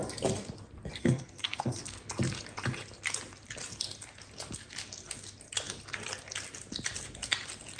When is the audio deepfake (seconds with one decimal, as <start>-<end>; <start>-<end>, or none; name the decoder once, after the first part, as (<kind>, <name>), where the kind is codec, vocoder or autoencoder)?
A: 1.0-2.0 (codec, SNAC)